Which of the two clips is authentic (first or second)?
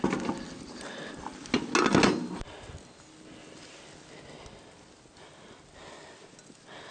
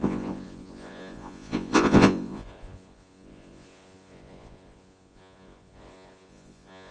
first